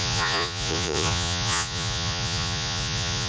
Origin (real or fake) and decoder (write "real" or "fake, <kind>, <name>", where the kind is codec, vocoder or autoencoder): fake, vocoder, Vocos